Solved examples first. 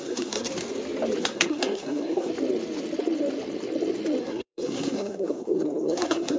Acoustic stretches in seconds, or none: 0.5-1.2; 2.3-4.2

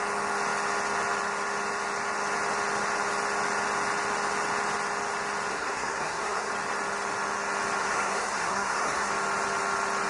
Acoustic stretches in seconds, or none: 0.0-5.5; 6.5-7.8; 9.1-10.1

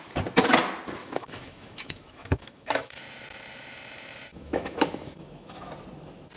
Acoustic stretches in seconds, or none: 0.0-1.0; 3.0-4.3; 5.7-6.4

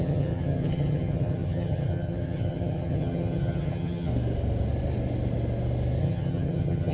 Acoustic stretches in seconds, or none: 4.1-6.0

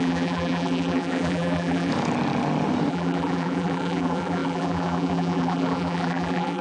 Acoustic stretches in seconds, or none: 1.9-2.9

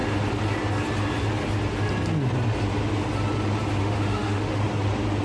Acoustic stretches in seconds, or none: 0.0-3.8; 4.6-5.2

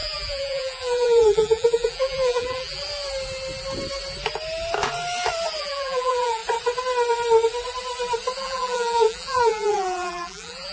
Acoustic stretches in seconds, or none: 2.8-5.6; 6.4-8.4